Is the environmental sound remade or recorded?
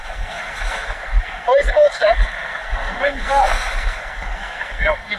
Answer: remade